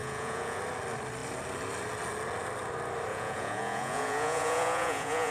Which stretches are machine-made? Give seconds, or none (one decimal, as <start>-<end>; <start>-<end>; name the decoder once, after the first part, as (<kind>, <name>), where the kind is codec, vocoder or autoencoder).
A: 0.0-0.6 (vocoder, Vocos); 3.1-5.3

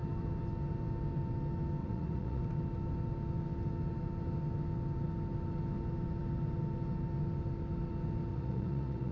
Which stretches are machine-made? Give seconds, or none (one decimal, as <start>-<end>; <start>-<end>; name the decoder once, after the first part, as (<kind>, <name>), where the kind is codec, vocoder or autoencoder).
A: 1.8-2.4 (vocoder, Vocos); 8.3-9.1

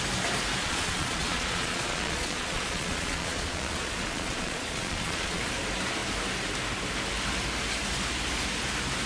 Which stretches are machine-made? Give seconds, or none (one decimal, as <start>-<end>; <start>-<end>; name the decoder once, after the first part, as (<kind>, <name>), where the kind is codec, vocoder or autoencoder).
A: 0.6-5.4 (vocoder, Vocos)

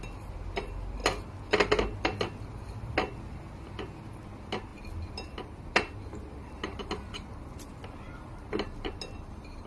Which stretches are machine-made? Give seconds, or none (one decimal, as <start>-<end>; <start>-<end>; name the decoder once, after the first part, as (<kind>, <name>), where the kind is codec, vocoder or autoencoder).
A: none

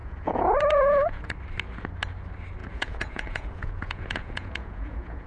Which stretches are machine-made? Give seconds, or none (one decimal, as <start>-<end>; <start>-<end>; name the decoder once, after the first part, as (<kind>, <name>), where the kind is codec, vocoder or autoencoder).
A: 0.0-1.3 (vocoder, Vocos); 2.6-5.3

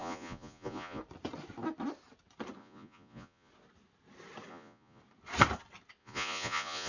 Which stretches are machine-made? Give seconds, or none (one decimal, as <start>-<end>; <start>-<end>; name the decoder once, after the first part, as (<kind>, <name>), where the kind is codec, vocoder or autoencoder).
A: 0.0-1.0 (vocoder, Vocos); 2.6-3.5; 4.5-5.0; 6.0-6.9

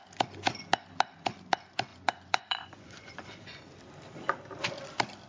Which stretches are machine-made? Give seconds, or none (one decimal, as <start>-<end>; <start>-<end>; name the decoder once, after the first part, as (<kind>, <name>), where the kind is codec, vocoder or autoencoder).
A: 1.9-3.6 (vocoder, Vocos)